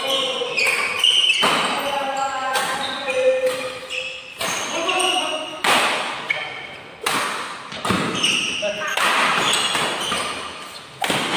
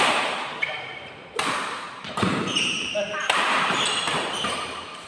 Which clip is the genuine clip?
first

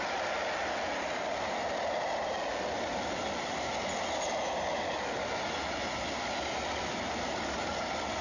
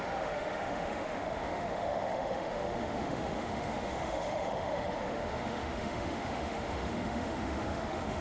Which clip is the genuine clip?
first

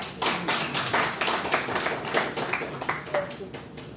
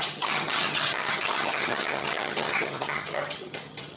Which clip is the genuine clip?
first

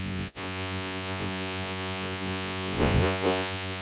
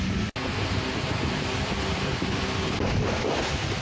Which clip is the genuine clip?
second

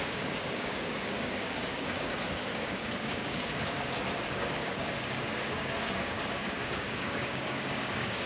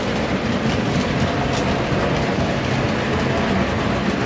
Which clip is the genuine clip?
second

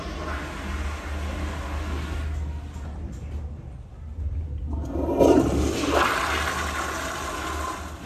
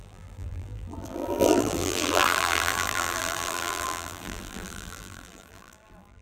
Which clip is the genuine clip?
first